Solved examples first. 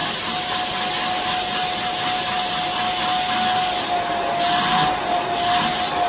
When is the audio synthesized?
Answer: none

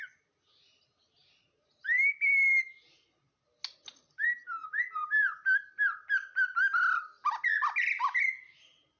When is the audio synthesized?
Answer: none

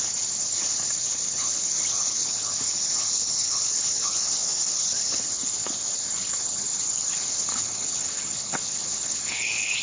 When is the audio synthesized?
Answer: 0.0-9.8

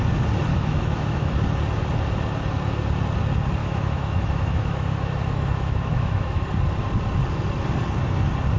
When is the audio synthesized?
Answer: 0.5-1.3; 3.6-6.4

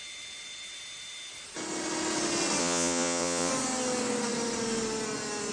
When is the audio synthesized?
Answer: 2.6-3.5

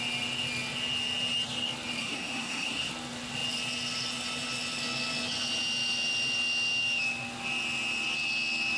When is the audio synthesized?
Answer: 2.0-2.9

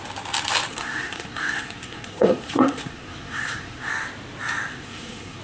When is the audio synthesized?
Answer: 0.7-3.9; 4.7-5.4